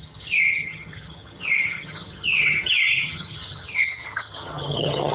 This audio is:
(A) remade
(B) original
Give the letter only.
A